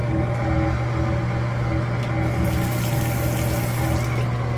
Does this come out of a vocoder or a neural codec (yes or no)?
no